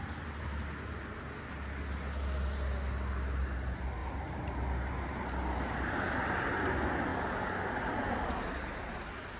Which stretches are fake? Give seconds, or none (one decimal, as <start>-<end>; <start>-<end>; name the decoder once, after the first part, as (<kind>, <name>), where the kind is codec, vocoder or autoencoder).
none

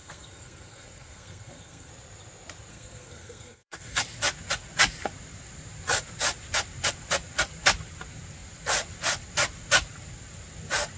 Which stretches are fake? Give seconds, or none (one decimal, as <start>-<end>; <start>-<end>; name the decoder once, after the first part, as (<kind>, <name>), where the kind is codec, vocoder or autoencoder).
0.0-1.9 (codec, SNAC); 2.7-4.0